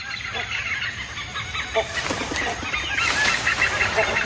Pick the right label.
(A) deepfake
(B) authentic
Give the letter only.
B